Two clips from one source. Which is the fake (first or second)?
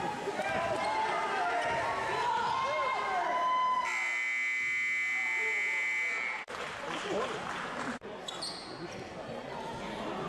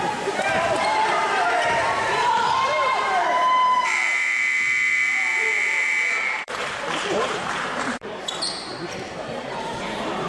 second